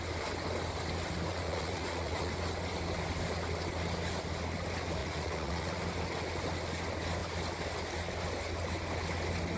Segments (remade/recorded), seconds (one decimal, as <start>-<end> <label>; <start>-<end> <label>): 0.0-1.3 recorded; 1.3-2.3 remade; 2.3-5.0 recorded; 5.0-5.8 remade; 5.8-9.6 recorded